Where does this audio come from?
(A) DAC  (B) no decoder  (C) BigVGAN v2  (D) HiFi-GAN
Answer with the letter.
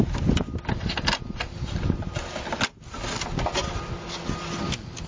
B